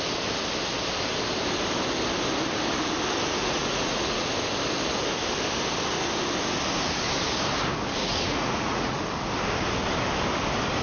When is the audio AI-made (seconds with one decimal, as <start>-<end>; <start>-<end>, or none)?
3.4-4.3; 8.0-9.0

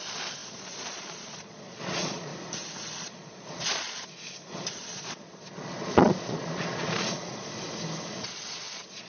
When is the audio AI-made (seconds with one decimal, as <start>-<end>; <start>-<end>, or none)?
0.0-2.3; 3.0-7.5; 8.1-9.1

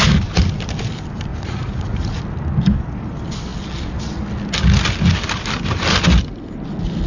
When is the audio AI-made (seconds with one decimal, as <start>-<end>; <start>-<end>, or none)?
1.3-2.2

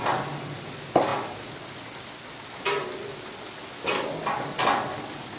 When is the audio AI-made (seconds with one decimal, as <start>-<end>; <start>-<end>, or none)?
none

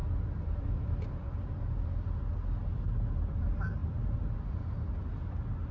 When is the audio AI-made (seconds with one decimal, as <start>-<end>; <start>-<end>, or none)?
none

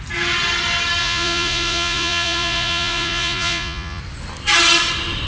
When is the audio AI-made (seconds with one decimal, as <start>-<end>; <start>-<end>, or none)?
1.0-4.0

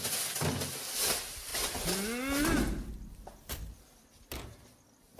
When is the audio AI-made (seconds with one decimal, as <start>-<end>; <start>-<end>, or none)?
none